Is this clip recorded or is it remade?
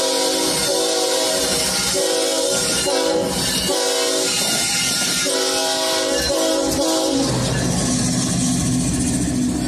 recorded